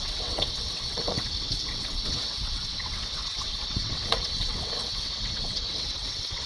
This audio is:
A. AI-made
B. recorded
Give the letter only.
A